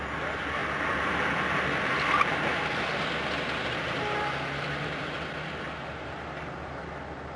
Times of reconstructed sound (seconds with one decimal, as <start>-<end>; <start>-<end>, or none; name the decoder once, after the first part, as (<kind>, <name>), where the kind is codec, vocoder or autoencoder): none